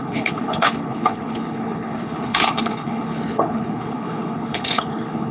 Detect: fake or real fake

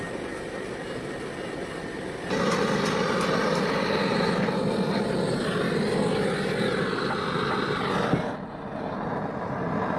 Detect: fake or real real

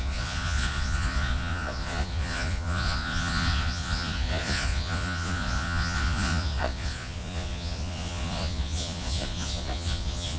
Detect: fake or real fake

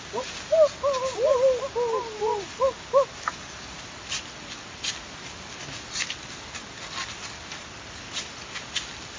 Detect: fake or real real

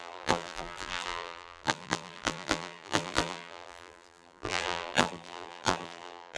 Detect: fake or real fake